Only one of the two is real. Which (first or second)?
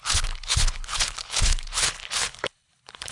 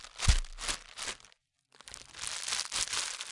second